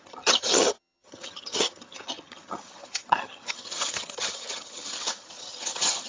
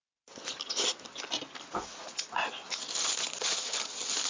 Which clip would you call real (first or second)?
second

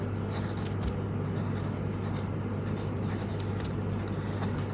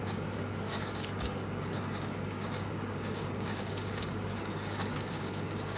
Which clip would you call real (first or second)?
first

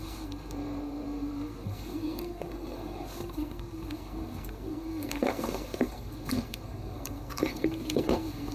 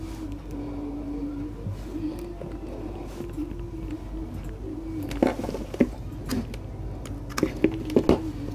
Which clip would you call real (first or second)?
second